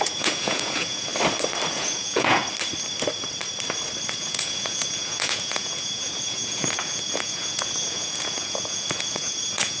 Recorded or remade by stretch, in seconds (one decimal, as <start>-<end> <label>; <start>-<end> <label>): 0.0-1.1 remade; 1.1-1.7 recorded; 1.7-2.4 remade; 2.4-4.1 recorded; 4.1-9.8 remade